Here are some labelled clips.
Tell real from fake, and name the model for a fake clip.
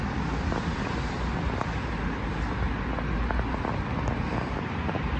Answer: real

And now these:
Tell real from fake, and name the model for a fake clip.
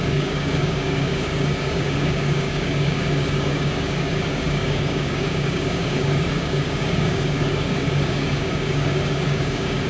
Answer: fake, codec, DAC